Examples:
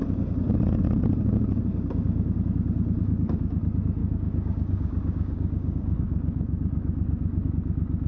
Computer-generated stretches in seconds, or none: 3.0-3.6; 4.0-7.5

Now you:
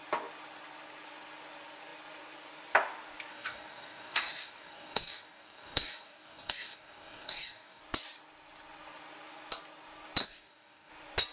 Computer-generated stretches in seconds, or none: 3.3-7.8; 10.2-10.9

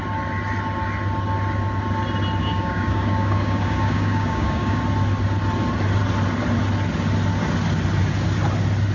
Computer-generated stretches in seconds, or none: 2.4-4.8

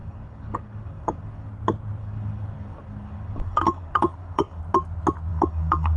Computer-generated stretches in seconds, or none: 0.0-1.5; 2.0-4.6; 5.3-6.0

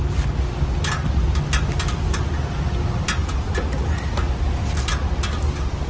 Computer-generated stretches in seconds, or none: none

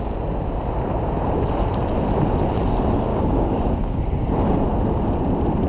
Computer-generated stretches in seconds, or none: 3.1-4.0

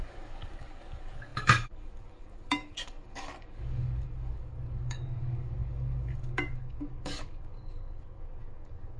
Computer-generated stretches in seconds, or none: 0.0-9.0